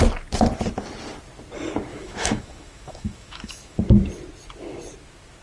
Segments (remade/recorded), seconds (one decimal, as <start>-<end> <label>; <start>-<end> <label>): 0.0-1.9 recorded; 1.9-3.8 remade; 3.8-5.4 recorded